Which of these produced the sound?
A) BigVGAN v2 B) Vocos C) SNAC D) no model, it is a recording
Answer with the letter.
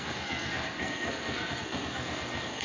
C